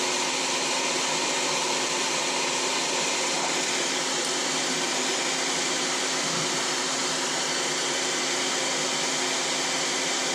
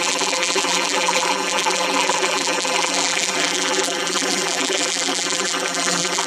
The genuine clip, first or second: first